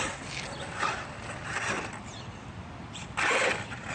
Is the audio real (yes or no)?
yes